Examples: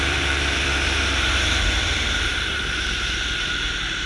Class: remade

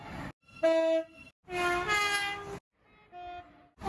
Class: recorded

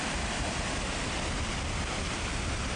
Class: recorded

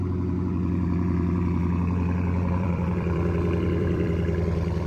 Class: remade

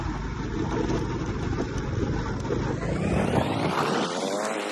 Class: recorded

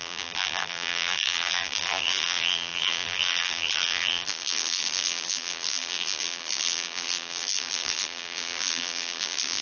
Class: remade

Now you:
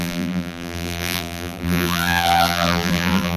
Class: remade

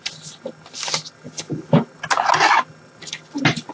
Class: recorded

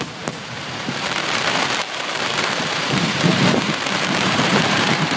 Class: remade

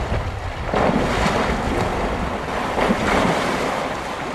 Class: remade